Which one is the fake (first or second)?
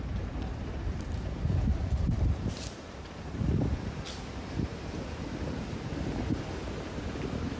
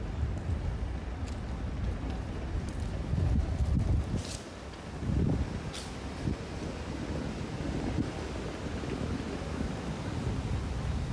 first